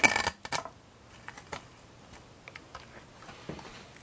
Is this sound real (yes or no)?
yes